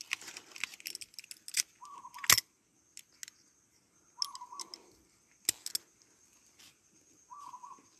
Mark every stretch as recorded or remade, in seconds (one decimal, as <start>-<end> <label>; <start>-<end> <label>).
0.0-8.0 recorded